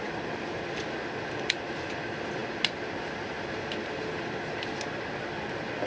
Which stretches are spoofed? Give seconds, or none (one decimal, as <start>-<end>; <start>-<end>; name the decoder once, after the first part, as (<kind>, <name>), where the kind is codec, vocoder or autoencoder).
none